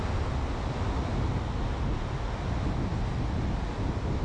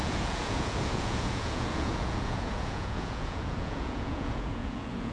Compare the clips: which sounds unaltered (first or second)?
first